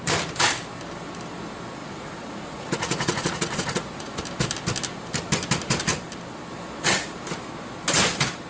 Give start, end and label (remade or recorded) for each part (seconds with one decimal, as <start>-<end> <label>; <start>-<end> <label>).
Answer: 0.0-1.8 recorded; 1.8-4.2 remade; 4.2-8.5 recorded